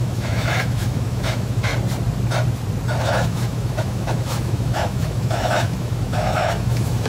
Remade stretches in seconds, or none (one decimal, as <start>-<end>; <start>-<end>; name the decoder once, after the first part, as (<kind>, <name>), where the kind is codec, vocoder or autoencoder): 0.0-1.7 (autoencoder, DAC-VAE); 3.0-7.1